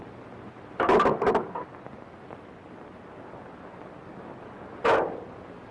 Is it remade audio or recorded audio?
recorded